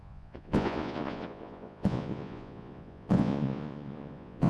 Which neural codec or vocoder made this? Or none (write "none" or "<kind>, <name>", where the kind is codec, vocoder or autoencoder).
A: vocoder, Vocos